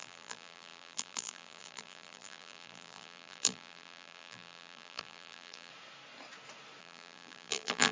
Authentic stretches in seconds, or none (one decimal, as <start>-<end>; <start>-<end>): 5.7-6.8